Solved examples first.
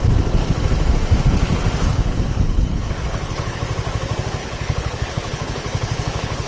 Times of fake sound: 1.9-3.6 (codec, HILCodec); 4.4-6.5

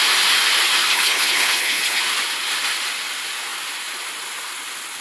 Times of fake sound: 0.9-2.0 (codec, HILCodec)

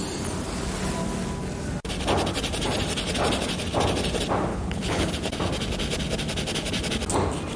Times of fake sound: 4.5-5.1 (codec, HILCodec)

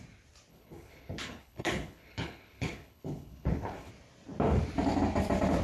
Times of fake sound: 0.5-3.9 (codec, HILCodec)

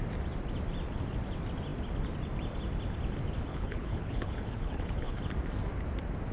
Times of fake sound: 3.5-5.2 (codec, HILCodec)

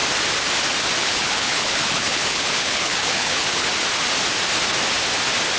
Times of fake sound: 1.0-3.7 (codec, HILCodec)